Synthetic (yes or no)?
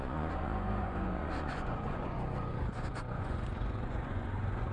yes